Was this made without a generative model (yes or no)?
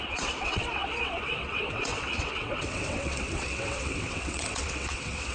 no